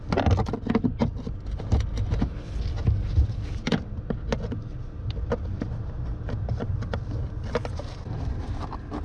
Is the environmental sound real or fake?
real